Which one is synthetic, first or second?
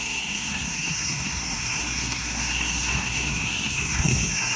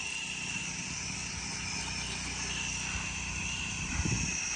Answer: first